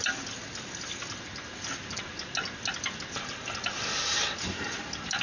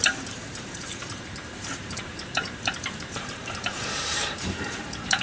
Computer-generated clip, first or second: second